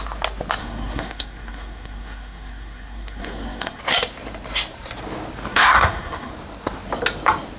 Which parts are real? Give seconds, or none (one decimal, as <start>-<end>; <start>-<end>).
0.0-0.6; 3.8-5.5; 6.3-7.6